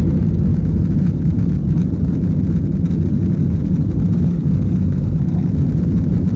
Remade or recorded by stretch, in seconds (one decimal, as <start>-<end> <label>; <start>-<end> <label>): 0.0-4.3 recorded; 4.3-5.5 remade; 5.5-6.4 recorded